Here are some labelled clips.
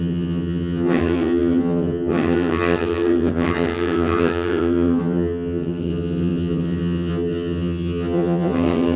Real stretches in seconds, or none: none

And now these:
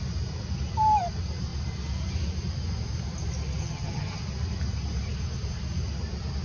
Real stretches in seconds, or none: 0.0-3.6; 4.2-6.4